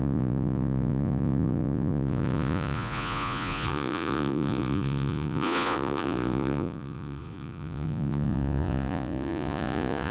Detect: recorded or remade remade